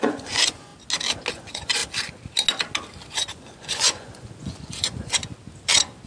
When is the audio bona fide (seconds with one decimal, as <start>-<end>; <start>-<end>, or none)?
0.7-1.3; 1.8-3.1; 5.2-6.1